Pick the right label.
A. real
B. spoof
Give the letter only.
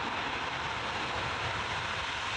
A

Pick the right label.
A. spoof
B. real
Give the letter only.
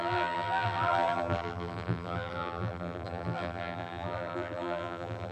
A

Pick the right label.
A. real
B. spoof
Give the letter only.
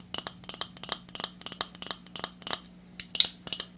A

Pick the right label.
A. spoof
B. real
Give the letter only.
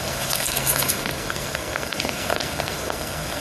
A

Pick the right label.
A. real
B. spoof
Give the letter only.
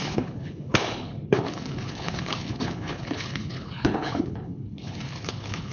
B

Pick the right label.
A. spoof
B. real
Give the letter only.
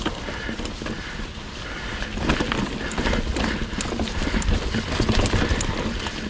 B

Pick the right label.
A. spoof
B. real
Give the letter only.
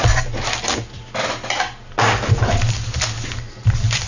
B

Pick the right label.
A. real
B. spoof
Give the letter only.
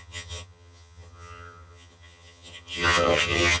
B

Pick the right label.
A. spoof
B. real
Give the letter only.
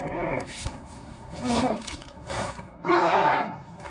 A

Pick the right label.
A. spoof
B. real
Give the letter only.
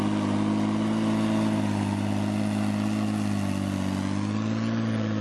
B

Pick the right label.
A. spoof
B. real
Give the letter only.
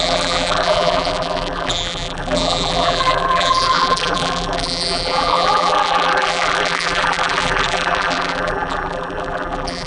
A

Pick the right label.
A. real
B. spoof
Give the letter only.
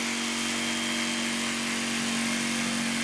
A